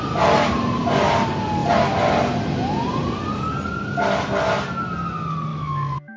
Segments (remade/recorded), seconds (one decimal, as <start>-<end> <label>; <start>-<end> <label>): 0.0-5.5 recorded; 5.5-6.2 remade

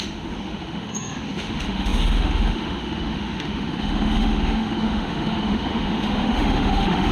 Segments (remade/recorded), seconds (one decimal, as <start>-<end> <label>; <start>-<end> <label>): 0.0-7.1 remade

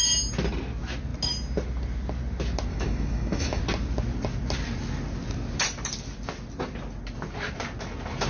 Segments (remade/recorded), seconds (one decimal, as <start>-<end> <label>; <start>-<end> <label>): 0.0-2.7 recorded; 2.7-3.6 remade; 3.6-8.3 recorded

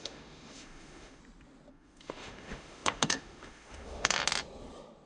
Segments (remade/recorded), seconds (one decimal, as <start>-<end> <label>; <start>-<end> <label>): 0.0-1.2 remade; 1.2-1.7 recorded; 1.7-4.2 remade; 4.2-5.1 recorded

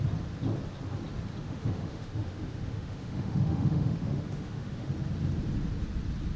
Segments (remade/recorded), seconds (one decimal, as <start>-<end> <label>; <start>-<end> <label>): 0.0-1.4 recorded; 1.4-4.9 remade; 4.9-6.4 recorded

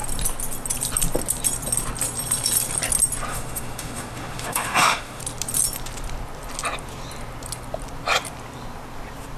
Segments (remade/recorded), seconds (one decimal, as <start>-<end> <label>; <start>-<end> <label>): 0.0-3.3 recorded; 3.3-5.2 remade; 5.2-9.4 recorded

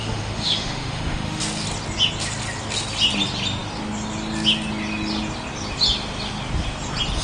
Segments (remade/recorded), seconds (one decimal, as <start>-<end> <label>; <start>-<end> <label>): 0.0-1.4 remade; 1.4-7.2 recorded